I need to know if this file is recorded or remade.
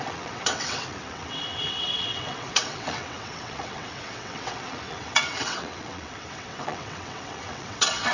remade